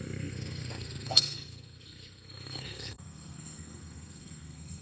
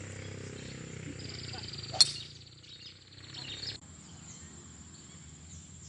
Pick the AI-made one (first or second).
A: first